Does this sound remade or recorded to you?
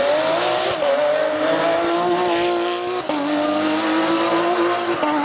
recorded